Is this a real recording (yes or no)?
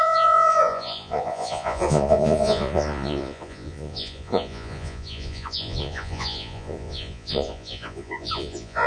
no